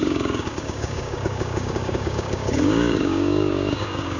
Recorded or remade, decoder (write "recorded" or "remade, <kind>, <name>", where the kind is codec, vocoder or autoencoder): remade, codec, DAC